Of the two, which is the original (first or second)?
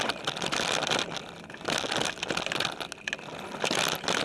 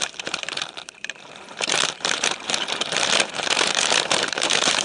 first